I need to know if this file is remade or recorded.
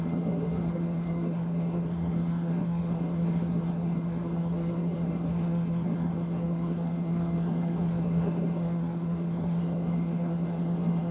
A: remade